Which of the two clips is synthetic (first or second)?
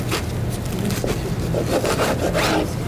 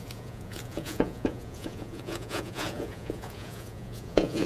second